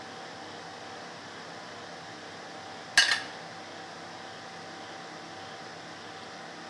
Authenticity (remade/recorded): recorded